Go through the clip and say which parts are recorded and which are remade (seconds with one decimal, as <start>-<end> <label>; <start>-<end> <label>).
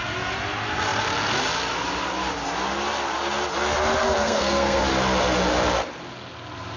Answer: 0.0-4.0 recorded; 4.0-4.8 remade; 4.8-6.8 recorded